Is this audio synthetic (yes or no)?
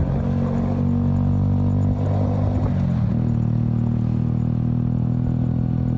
no